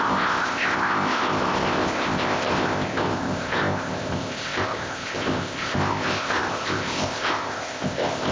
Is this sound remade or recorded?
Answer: remade